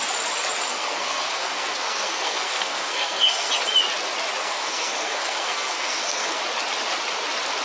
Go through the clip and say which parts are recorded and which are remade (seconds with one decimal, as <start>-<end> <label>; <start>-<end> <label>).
0.0-0.7 recorded; 0.7-3.5 remade; 3.5-4.4 recorded; 4.4-6.4 remade; 6.4-7.6 recorded